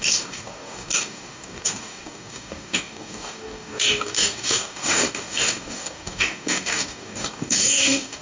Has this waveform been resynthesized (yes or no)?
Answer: yes